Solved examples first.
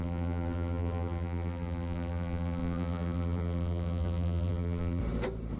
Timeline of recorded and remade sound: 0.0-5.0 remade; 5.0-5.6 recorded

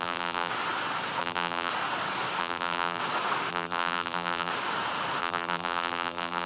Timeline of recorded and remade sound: 0.0-0.5 remade; 0.5-1.2 recorded; 1.2-1.7 remade; 1.7-2.4 recorded; 2.4-3.0 remade; 3.0-3.5 recorded; 3.5-4.5 remade; 4.5-5.2 recorded; 5.2-6.5 remade

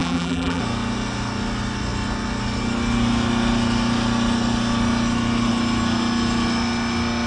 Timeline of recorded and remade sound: 0.0-0.6 remade; 0.6-7.3 recorded

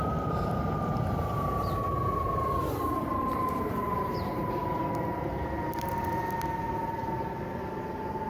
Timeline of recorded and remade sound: 0.0-4.8 remade; 4.8-8.3 recorded

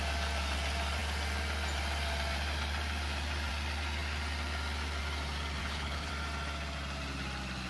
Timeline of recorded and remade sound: 0.0-5.6 recorded; 5.6-6.1 remade; 6.1-7.7 recorded

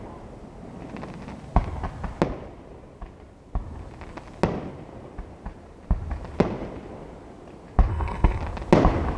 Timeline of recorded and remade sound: 0.0-7.9 recorded; 7.9-8.4 remade; 8.4-9.2 recorded

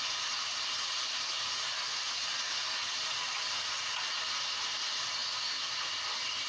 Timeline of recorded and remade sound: 0.0-6.5 recorded